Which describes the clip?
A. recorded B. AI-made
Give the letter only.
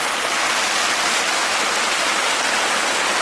A